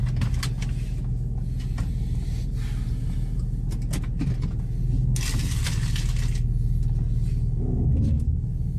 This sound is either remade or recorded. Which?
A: recorded